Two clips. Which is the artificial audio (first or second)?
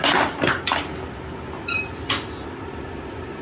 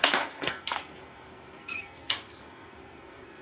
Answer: second